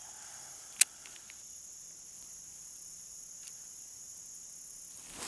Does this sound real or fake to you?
real